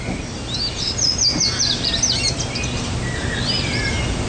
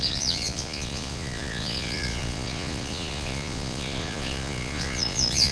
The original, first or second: first